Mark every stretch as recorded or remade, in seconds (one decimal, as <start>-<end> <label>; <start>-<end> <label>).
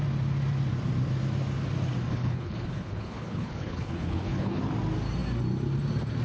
0.0-2.1 recorded; 2.1-4.6 remade; 4.6-6.2 recorded